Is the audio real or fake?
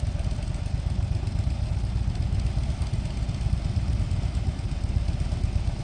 real